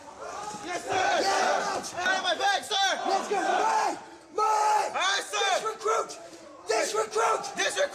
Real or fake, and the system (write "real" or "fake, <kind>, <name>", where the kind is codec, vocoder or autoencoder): real